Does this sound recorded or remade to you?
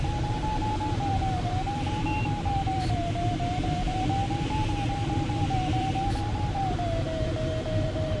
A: remade